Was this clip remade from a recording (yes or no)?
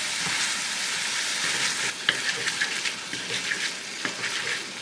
no